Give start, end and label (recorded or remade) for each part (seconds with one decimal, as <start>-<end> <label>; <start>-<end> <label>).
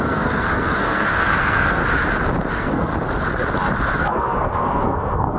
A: 0.0-1.8 remade; 1.8-2.5 recorded; 2.5-2.9 remade; 2.9-4.0 recorded; 4.0-5.4 remade